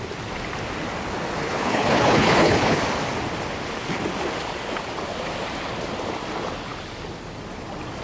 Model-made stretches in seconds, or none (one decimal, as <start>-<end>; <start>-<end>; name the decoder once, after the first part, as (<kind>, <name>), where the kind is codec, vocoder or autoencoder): 1.4-2.8 (codec, HILCodec)